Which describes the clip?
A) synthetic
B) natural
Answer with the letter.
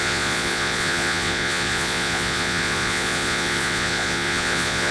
A